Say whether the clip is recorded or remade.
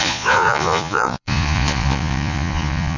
remade